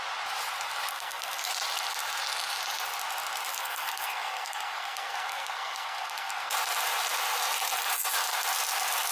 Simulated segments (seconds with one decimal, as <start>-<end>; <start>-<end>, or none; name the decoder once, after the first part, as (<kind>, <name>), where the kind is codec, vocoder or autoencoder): 0.9-1.5 (codec, SNAC); 3.5-6.5